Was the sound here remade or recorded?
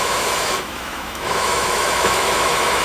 remade